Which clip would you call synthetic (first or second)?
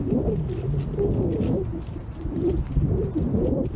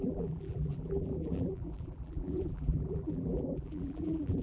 second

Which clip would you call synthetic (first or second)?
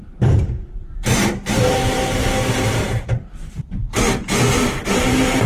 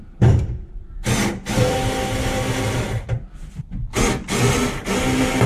first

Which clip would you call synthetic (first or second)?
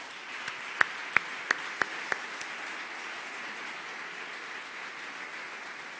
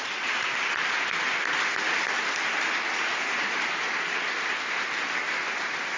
second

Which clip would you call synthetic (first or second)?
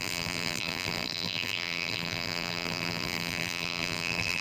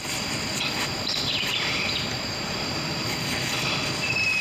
first